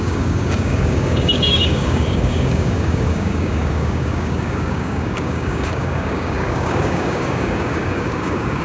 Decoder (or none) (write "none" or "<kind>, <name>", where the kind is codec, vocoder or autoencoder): codec, DAC